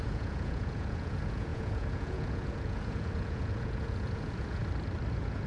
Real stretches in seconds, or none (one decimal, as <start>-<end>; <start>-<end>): 4.6-5.1